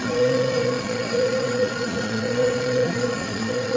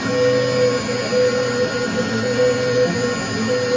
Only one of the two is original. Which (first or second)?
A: second